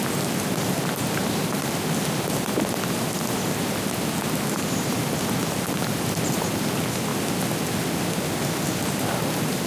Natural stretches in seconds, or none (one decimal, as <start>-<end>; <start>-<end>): 7.1-9.0